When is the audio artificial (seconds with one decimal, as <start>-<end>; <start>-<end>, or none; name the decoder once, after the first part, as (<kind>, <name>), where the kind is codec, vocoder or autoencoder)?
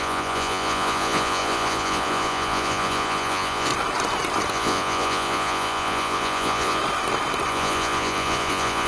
0.0-3.7 (vocoder, Vocos); 4.5-6.8; 7.5-8.9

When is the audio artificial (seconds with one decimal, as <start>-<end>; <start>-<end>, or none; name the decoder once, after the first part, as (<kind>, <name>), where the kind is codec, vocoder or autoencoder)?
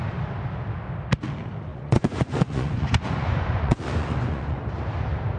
1.7-4.6 (vocoder, Vocos)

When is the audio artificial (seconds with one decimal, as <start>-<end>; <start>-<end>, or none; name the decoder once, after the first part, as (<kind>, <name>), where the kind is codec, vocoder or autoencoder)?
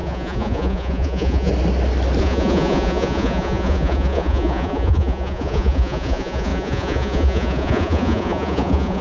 0.0-1.5 (vocoder, Vocos); 2.2-9.0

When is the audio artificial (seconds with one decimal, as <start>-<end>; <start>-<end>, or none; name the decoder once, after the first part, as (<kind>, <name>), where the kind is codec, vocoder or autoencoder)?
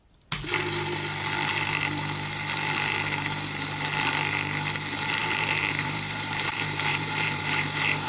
5.2-7.4 (vocoder, BigVGAN v2)